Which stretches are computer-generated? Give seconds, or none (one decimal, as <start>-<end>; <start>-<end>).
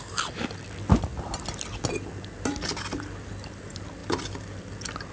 none